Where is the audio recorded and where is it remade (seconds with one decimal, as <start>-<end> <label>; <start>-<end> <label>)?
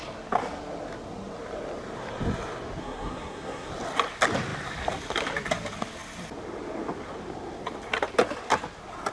0.0-2.8 recorded; 2.8-3.7 remade; 3.7-9.1 recorded